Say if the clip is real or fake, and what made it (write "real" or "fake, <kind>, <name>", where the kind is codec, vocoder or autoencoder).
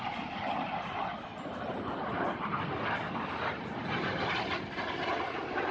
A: real